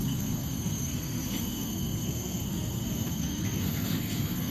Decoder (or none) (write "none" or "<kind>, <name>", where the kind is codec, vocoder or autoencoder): codec, SNAC